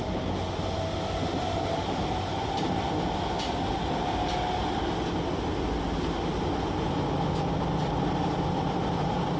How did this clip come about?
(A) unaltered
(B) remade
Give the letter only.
A